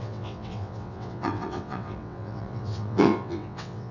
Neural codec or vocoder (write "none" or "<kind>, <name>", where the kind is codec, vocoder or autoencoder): vocoder, WaveNeXt